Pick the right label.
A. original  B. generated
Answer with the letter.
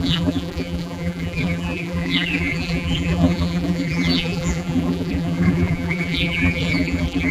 B